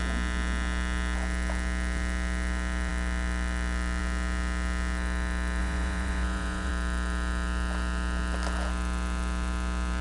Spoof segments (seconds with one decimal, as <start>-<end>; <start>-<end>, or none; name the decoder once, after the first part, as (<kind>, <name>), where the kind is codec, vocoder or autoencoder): 5.6-6.7 (vocoder, Vocos)